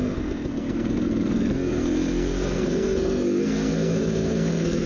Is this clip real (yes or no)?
no